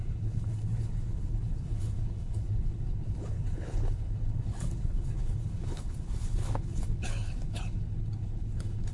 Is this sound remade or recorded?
remade